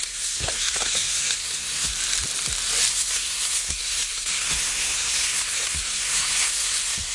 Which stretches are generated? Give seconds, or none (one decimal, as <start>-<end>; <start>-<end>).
0.0-1.9; 2.9-7.1